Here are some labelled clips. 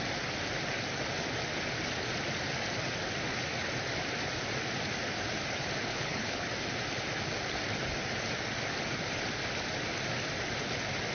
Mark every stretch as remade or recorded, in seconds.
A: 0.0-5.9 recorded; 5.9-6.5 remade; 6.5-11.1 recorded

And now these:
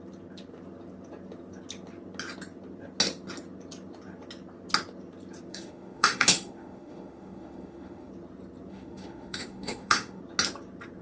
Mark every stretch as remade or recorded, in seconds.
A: 0.0-5.5 recorded; 5.5-8.1 remade; 8.1-8.7 recorded; 8.7-10.2 remade; 10.2-11.0 recorded

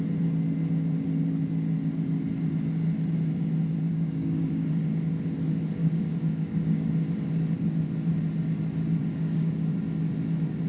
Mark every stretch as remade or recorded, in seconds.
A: 0.0-3.9 recorded; 3.9-4.7 remade; 4.7-5.8 recorded; 5.8-6.9 remade; 6.9-9.0 recorded; 9.0-9.8 remade; 9.8-10.7 recorded

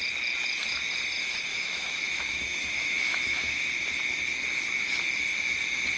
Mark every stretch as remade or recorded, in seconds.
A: 0.0-1.5 recorded; 1.5-3.7 remade; 3.7-6.0 recorded